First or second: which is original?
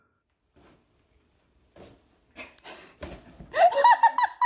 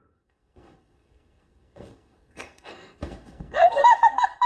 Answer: first